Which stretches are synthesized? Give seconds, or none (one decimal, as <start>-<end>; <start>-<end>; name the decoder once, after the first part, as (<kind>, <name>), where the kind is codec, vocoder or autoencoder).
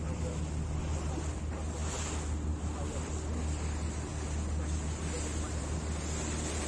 none